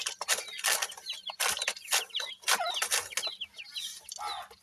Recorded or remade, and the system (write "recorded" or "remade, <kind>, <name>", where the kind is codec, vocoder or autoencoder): recorded